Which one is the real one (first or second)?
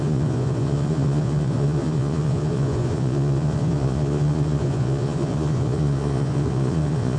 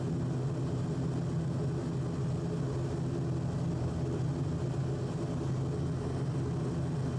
second